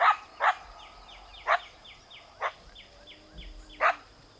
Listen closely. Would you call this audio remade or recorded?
recorded